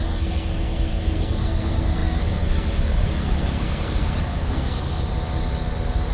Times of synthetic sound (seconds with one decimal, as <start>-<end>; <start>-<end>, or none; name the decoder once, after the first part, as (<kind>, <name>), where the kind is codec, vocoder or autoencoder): 0.0-4.9 (codec, SNAC)